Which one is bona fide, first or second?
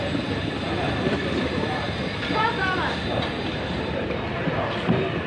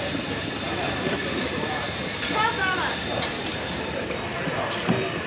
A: second